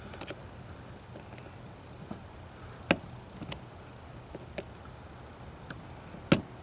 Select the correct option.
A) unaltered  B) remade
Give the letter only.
A